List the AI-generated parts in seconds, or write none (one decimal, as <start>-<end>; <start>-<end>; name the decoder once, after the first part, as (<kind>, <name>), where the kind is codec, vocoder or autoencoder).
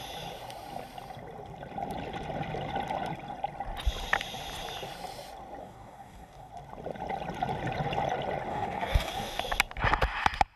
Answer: 5.6-6.5 (codec, DAC); 8.5-9.4